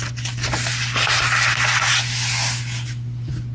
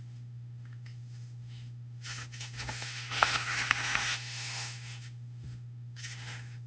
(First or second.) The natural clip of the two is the first